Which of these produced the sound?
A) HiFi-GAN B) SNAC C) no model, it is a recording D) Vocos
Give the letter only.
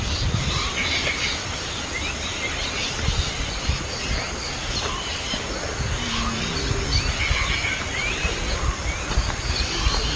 C